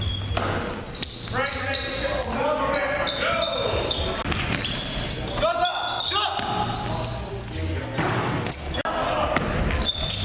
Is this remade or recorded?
recorded